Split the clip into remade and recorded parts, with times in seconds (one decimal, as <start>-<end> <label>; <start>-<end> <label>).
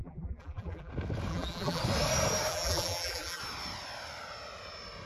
0.0-0.9 remade; 0.9-1.3 recorded; 1.3-1.8 remade; 1.8-2.5 recorded; 2.5-3.4 remade; 3.4-5.1 recorded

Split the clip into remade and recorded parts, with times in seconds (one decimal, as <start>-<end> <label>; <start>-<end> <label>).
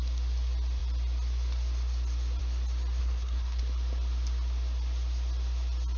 0.0-3.0 recorded; 3.0-3.6 remade; 3.6-6.0 recorded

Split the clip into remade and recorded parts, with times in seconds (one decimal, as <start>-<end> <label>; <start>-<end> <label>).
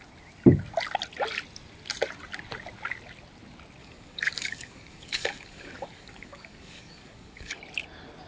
0.0-3.8 recorded; 3.8-7.6 remade; 7.6-8.3 recorded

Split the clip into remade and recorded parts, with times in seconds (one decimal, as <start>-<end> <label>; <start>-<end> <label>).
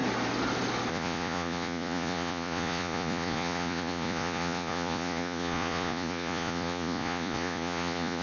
0.0-0.9 recorded; 0.9-8.2 remade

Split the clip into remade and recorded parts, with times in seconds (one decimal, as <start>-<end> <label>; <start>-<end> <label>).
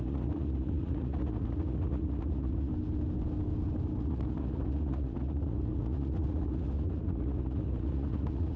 0.0-2.7 remade; 2.7-4.0 recorded; 4.0-8.6 remade